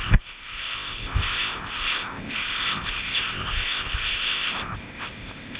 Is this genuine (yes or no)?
no